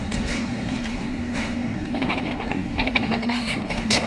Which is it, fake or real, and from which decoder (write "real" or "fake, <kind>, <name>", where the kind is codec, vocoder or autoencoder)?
fake, codec, SNAC